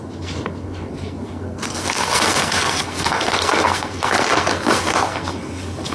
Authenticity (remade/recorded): remade